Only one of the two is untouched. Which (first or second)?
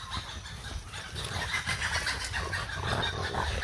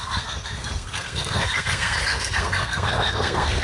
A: first